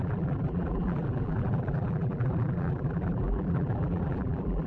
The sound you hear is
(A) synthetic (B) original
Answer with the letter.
A